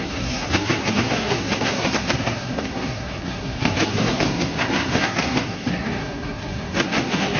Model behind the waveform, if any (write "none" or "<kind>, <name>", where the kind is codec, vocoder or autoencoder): codec, SNAC